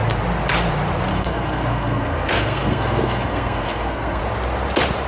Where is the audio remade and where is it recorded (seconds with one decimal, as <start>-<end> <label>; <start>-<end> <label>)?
0.0-1.1 recorded; 1.1-4.2 remade; 4.2-5.1 recorded